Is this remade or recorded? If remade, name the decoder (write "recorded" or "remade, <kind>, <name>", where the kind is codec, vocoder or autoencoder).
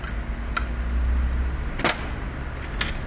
recorded